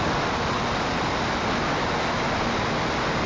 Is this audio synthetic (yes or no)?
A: no